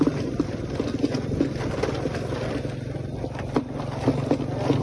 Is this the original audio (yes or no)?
yes